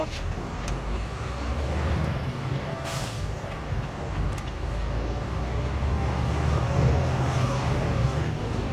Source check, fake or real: fake